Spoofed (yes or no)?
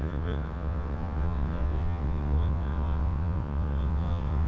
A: yes